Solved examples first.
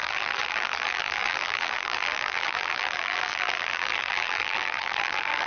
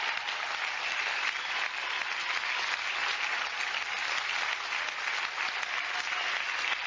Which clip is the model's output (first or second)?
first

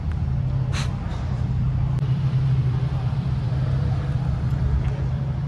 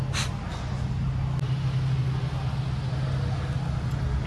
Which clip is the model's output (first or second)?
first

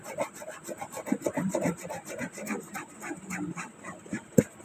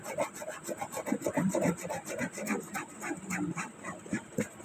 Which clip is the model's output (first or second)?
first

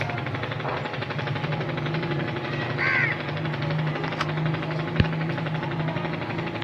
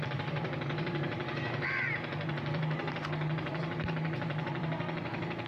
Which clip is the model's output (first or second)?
second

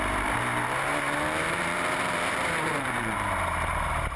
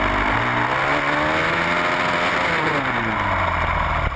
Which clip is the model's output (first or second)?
first